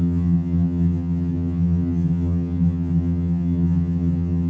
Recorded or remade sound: remade